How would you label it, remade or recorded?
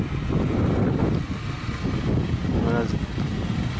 recorded